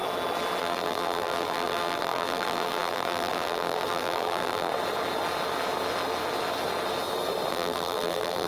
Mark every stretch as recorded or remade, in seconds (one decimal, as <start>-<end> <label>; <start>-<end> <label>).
0.0-0.6 recorded; 0.6-4.7 remade; 4.7-7.5 recorded; 7.5-8.5 remade